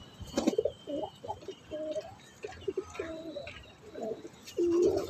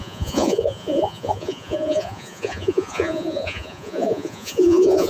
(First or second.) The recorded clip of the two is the first